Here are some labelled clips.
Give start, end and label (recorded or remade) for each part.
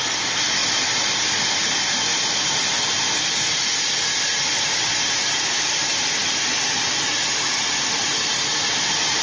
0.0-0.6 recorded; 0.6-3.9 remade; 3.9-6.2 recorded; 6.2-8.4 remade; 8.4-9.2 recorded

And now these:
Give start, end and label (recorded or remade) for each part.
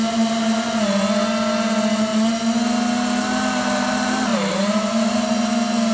0.0-5.9 recorded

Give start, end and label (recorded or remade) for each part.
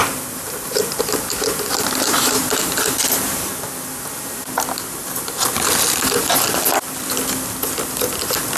0.0-3.5 remade; 3.5-8.6 recorded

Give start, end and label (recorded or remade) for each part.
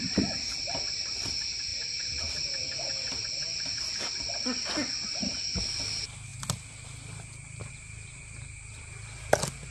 0.0-9.7 recorded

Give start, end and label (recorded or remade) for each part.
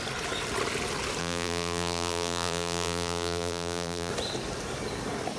0.0-1.2 recorded; 1.2-4.1 remade; 4.1-5.4 recorded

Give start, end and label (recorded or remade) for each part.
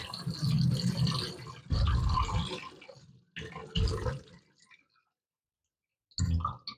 0.0-6.8 recorded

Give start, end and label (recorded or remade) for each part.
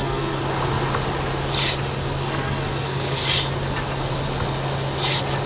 0.0-0.4 remade; 0.4-2.2 recorded; 2.2-3.2 remade; 3.2-5.5 recorded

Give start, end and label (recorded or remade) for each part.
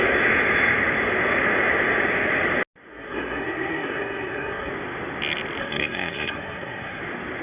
0.0-2.9 recorded; 2.9-4.7 remade; 4.7-5.6 recorded; 5.6-7.0 remade; 7.0-7.4 recorded